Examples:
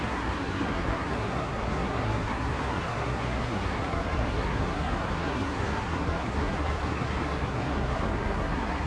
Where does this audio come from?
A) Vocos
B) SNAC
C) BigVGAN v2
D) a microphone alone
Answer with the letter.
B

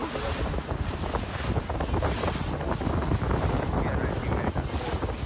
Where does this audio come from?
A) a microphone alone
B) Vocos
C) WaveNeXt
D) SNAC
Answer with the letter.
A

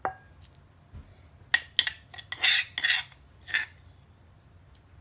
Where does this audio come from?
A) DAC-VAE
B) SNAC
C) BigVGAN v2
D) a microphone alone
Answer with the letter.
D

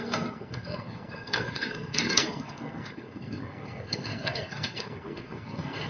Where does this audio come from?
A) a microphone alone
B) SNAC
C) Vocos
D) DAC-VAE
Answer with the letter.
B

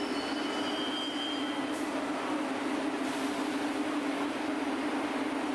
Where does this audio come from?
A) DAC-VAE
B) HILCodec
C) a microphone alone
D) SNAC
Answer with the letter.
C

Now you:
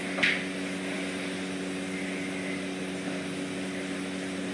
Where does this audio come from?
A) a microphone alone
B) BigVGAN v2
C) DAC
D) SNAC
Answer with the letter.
A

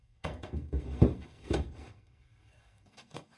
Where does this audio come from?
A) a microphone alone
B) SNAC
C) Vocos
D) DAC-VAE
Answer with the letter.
B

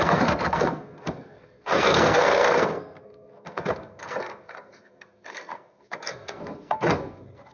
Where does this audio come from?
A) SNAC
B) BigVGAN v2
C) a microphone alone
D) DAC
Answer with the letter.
A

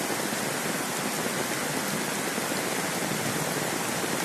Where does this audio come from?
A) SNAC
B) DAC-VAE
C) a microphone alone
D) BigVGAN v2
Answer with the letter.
C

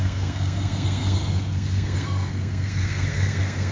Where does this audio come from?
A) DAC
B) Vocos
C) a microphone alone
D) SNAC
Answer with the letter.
D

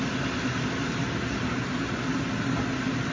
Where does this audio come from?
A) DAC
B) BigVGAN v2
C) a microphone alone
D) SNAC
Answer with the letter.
C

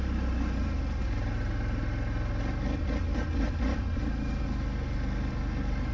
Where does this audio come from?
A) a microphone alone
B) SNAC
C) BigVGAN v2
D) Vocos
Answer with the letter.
A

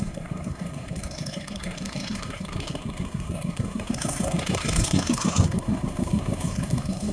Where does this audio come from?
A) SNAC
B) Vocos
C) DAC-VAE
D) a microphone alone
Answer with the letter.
A